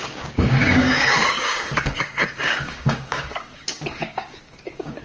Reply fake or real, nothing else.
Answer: fake